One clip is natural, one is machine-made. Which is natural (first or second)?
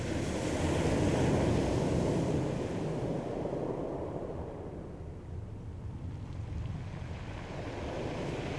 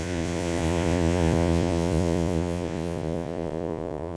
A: first